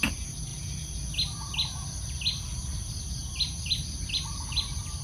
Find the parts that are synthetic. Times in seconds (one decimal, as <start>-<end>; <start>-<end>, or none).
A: none